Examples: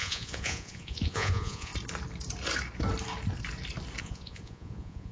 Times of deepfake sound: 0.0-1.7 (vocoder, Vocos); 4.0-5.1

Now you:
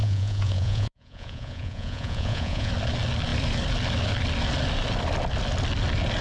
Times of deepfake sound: 0.0-2.7 (vocoder, Vocos)